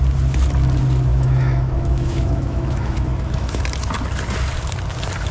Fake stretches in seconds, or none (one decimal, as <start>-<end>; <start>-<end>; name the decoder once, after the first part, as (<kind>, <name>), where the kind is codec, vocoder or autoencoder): 1.1-3.6 (autoencoder, DAC-VAE)

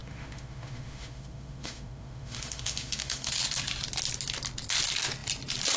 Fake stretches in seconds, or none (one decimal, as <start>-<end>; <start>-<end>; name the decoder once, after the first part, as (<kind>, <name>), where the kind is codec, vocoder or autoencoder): 0.0-3.3 (autoencoder, DAC-VAE)

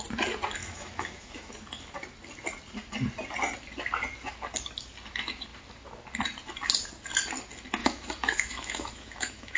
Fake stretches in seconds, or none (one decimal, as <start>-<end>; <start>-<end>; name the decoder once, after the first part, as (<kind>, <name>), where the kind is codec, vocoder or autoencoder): 0.6-1.5 (autoencoder, DAC-VAE); 7.8-9.6

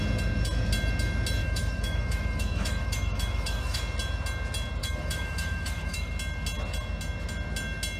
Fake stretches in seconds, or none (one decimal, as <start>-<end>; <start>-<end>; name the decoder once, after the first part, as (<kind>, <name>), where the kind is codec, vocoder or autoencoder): 1.4-3.8 (autoencoder, DAC-VAE); 4.8-6.1